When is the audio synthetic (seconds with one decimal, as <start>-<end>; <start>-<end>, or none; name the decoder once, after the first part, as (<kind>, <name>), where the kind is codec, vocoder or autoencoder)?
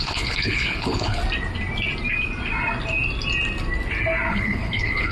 0.0-1.2 (codec, HILCodec); 4.3-5.1